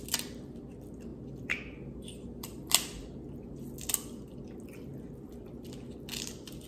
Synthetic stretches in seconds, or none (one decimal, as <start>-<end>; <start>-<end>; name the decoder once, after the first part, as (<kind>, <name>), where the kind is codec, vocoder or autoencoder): none